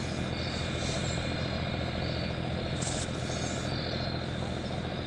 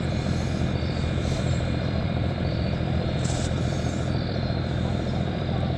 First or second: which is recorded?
first